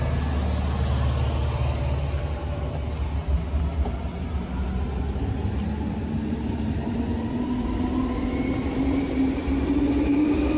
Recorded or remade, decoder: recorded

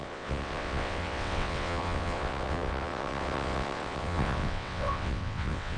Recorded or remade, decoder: remade, vocoder, WaveNeXt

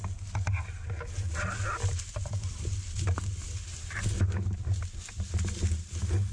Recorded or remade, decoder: recorded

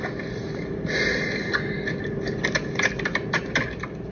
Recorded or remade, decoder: recorded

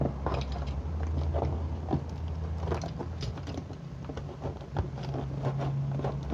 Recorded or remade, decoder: recorded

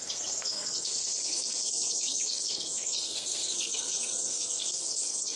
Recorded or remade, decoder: remade, codec, SNAC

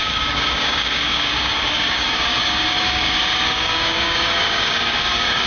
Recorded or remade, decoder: remade, codec, DAC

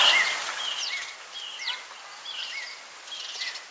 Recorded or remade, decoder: recorded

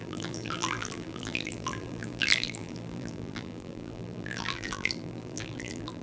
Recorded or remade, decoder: remade, vocoder, BigVGAN v2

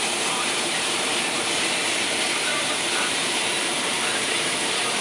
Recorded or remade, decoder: remade, vocoder, BigVGAN v2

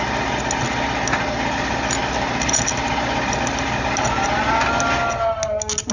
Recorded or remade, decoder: recorded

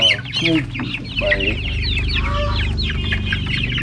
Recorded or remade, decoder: recorded